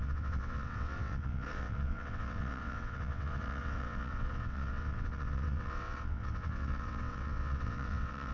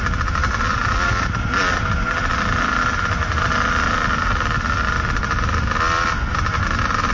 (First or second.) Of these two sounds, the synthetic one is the first